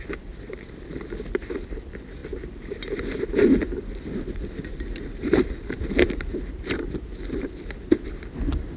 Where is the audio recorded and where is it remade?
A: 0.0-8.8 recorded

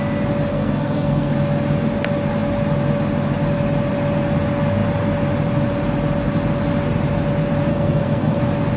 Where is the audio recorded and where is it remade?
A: 0.0-0.5 recorded; 0.5-1.3 remade; 1.3-7.7 recorded; 7.7-8.4 remade; 8.4-8.8 recorded

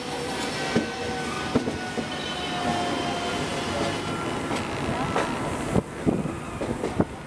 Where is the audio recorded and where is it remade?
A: 0.0-7.3 recorded

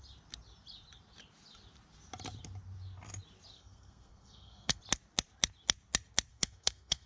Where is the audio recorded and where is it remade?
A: 0.0-3.5 recorded; 3.5-4.8 remade; 4.8-6.3 recorded; 6.3-7.1 remade

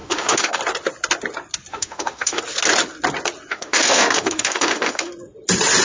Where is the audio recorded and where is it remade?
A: 0.0-0.6 remade; 0.6-1.7 recorded; 1.7-2.4 remade; 2.4-3.5 recorded; 3.5-5.1 remade; 5.1-5.8 recorded

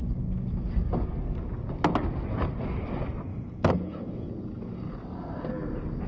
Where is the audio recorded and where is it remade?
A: 0.0-3.3 recorded; 3.3-4.3 remade; 4.3-6.1 recorded

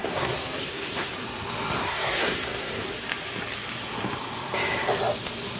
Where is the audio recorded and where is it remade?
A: 0.0-1.1 remade; 1.1-1.8 recorded; 1.8-2.8 remade; 2.8-5.6 recorded

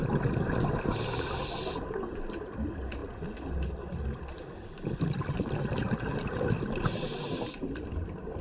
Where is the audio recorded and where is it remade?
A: 0.0-8.4 recorded